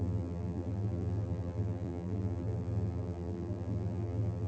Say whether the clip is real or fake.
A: fake